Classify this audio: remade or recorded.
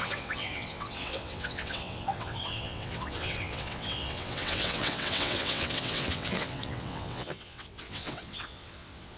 remade